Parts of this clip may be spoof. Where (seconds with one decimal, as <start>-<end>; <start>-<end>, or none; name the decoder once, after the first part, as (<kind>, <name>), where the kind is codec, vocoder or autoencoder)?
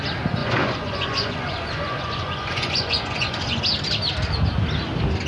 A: 0.4-3.6 (vocoder, Vocos)